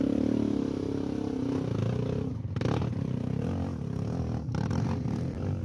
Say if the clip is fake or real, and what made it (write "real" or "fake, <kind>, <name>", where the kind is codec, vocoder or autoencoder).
real